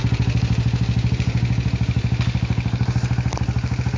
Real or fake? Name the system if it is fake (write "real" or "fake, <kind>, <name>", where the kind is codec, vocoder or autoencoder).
real